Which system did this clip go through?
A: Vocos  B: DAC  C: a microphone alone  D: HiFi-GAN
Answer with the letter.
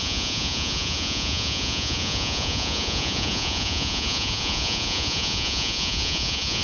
A